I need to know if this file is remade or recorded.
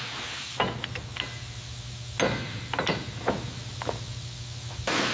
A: recorded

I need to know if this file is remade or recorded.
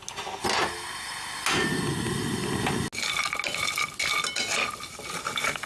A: recorded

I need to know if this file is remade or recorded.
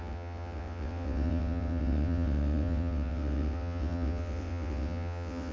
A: remade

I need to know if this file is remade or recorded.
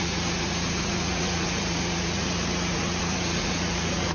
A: remade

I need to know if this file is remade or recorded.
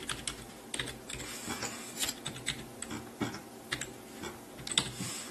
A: recorded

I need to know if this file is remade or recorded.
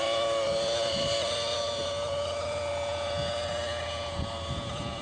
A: recorded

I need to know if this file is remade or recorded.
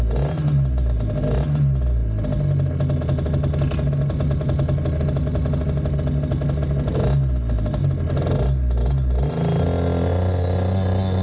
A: recorded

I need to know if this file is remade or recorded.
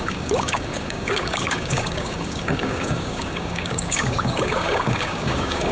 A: remade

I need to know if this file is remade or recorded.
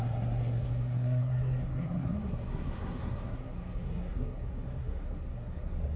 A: remade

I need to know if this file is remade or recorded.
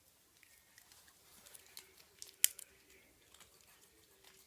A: recorded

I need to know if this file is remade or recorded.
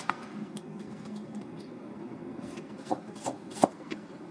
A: remade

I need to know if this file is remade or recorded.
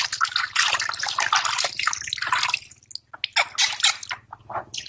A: recorded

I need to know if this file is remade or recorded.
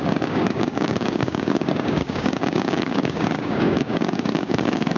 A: remade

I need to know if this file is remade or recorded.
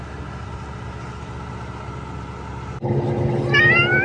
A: recorded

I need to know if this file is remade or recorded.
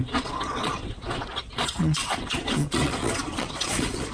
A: remade